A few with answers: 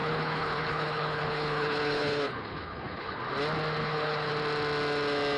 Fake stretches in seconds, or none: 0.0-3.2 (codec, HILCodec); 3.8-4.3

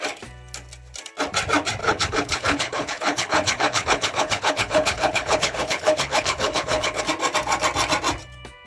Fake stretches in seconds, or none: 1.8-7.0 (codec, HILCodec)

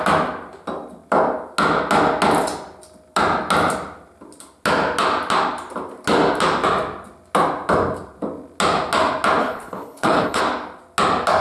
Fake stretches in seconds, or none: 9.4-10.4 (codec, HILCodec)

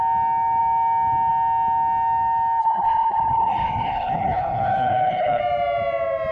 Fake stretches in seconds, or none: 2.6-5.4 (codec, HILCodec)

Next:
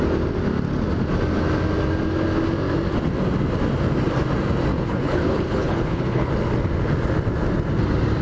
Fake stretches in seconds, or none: 4.7-6.3 (codec, HILCodec)

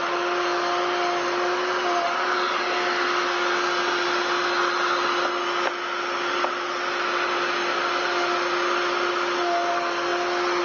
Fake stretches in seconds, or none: none

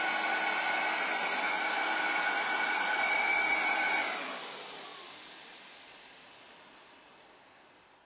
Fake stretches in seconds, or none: none

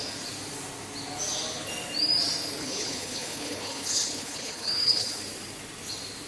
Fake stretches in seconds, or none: 2.6-5.2 (codec, HILCodec)